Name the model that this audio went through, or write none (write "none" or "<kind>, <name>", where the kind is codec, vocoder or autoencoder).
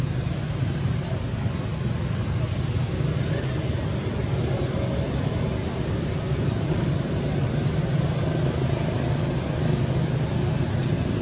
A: none